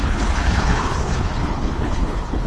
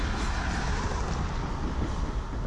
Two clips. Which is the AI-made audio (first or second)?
first